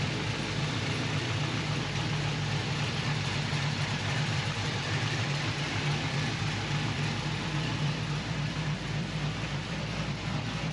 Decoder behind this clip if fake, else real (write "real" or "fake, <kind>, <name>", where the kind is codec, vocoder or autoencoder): fake, vocoder, BigVGAN v2